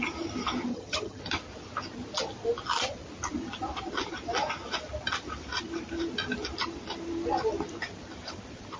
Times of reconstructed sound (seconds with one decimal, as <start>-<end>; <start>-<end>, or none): 0.7-1.2